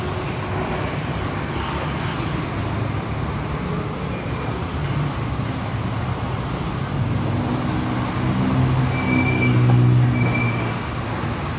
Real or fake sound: real